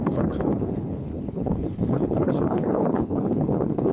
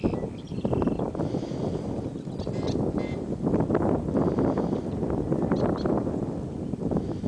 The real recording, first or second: second